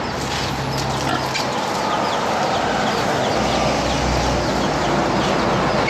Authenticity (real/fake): real